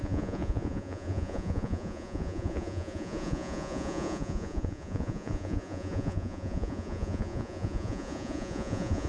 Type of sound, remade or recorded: remade